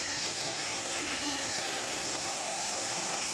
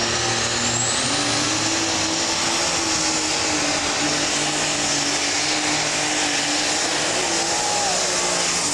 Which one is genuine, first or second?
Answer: second